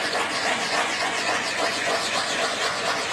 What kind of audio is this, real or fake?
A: fake